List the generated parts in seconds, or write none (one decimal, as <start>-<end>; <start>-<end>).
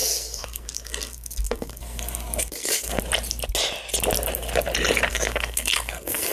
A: 0.0-3.0; 5.1-6.3